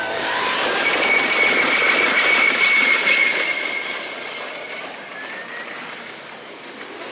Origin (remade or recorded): recorded